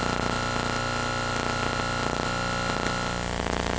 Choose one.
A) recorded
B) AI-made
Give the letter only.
A